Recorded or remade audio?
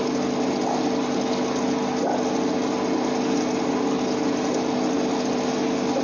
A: recorded